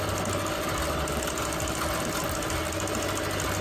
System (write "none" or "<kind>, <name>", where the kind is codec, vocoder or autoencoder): none